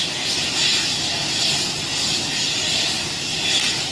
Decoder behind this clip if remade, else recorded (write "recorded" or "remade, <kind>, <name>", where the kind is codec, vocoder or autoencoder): recorded